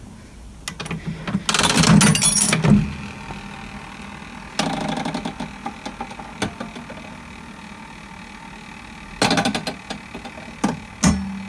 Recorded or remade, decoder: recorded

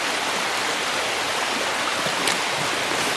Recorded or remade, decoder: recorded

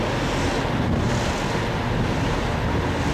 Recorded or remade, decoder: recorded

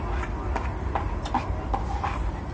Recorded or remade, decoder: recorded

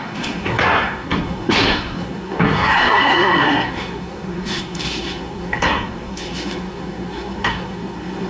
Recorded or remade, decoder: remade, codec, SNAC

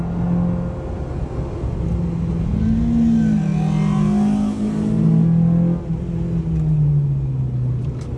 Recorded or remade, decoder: recorded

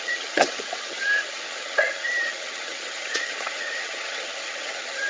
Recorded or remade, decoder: remade, vocoder, HiFi-GAN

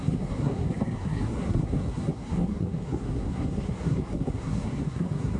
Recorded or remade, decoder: remade, codec, SNAC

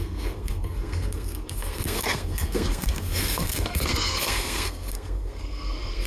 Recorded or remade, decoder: remade, codec, SNAC